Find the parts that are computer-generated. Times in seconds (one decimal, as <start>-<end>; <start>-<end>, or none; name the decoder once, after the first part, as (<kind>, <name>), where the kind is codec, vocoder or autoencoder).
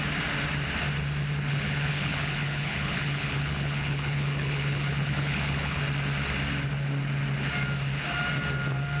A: 1.5-5.8 (codec, HILCodec)